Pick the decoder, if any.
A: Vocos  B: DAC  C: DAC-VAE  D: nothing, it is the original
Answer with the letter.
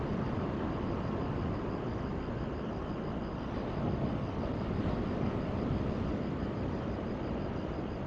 D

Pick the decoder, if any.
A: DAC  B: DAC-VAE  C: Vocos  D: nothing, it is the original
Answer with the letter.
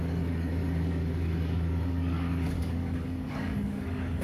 A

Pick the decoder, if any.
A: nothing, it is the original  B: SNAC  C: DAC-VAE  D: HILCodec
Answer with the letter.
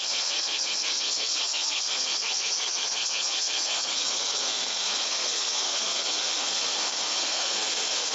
B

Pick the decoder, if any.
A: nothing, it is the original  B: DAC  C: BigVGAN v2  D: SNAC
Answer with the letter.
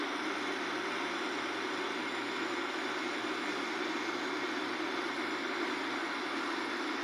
A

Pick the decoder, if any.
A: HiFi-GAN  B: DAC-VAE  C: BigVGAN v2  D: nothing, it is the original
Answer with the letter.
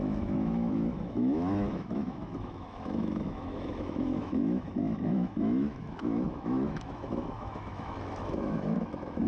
B